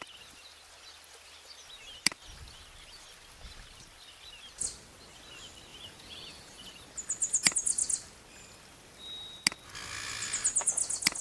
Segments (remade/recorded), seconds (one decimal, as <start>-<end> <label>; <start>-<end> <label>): 0.0-5.7 recorded; 5.7-6.7 remade; 6.7-11.2 recorded